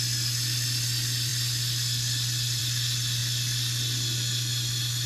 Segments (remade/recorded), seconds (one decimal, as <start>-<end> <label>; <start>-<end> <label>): 0.0-5.1 recorded